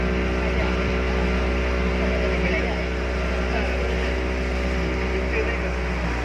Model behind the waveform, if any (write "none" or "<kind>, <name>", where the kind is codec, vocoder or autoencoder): none